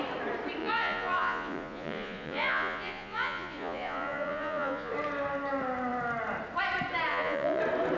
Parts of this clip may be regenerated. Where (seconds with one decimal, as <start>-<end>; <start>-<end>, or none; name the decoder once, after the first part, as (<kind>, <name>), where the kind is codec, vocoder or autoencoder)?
0.6-4.9 (vocoder, Vocos); 7.1-7.6

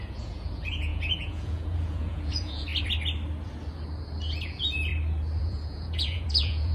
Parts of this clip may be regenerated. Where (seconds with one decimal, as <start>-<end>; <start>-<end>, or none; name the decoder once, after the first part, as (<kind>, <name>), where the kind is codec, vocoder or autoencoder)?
0.0-2.7 (vocoder, Vocos); 4.4-4.9; 5.4-6.7

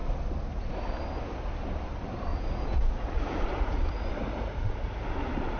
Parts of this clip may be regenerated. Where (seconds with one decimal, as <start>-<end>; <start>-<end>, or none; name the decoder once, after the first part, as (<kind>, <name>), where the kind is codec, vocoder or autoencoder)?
2.3-5.1 (vocoder, Vocos)